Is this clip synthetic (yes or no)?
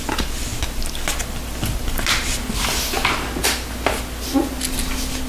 no